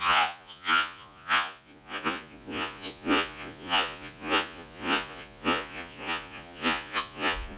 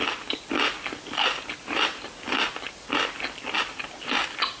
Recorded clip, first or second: second